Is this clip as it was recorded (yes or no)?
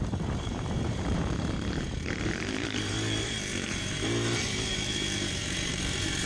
no